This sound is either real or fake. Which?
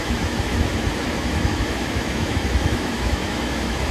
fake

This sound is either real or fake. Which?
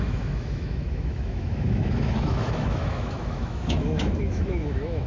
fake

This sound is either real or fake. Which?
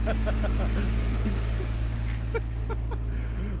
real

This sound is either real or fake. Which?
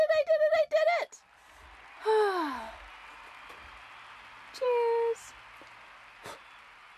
real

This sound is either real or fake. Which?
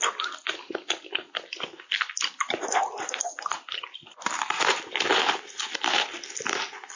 real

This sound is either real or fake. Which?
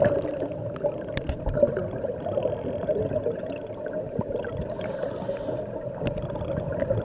real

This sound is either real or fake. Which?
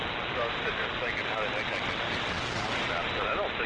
real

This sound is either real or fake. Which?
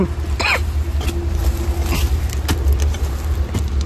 real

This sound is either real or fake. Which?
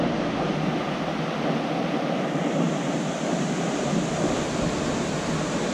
real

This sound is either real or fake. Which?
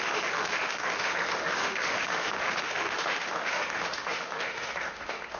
fake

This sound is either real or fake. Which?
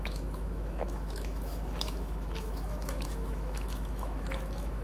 fake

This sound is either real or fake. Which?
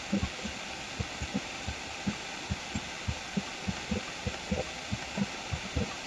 real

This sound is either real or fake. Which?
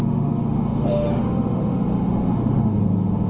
fake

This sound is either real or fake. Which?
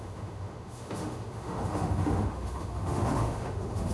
fake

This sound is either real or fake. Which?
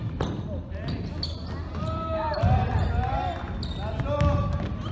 real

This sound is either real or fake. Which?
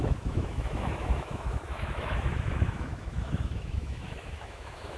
fake